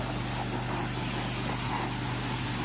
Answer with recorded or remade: recorded